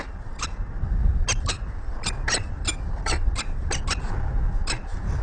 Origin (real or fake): real